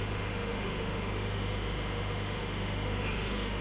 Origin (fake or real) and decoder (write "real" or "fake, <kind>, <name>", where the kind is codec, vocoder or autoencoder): fake, autoencoder, DAC-VAE